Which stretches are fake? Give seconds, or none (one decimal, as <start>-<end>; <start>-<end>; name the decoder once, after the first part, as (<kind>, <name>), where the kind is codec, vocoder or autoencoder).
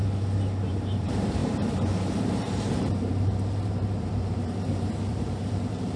0.7-6.0 (vocoder, BigVGAN v2)